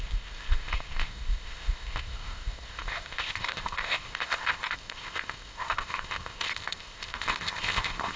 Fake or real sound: fake